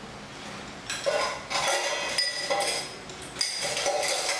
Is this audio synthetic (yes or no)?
no